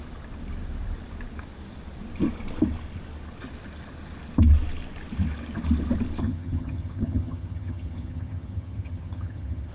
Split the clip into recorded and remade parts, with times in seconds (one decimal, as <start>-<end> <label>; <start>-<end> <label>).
0.0-6.2 recorded; 6.2-9.7 remade